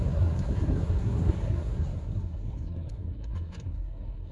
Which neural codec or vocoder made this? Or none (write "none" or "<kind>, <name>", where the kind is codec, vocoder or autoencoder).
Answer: codec, SNAC